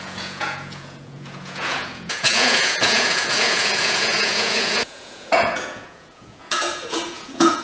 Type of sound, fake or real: fake